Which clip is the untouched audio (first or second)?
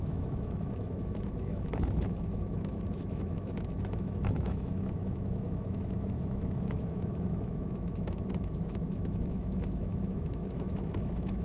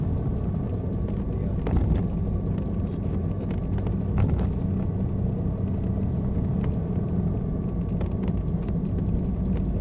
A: second